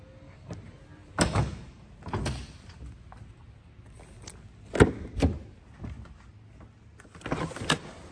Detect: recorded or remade recorded